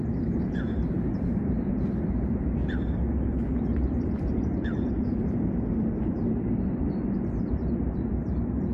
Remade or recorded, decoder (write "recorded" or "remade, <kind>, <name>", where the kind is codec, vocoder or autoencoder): remade, vocoder, BigVGAN v2